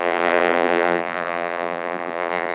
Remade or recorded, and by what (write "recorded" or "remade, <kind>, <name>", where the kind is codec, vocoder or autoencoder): remade, vocoder, BigVGAN v2